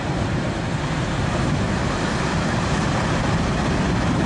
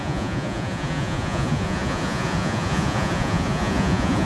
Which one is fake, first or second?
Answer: second